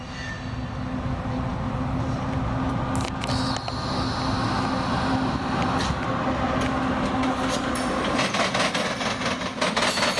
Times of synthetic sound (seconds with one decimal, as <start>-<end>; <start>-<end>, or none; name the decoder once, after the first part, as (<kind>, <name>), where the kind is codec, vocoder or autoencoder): none